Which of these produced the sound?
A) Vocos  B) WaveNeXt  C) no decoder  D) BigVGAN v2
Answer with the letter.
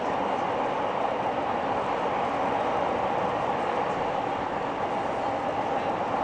C